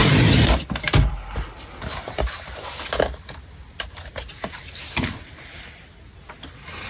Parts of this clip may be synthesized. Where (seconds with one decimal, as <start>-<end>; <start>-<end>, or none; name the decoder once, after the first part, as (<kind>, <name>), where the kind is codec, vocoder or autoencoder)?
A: none